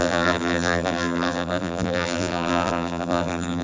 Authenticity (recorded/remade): remade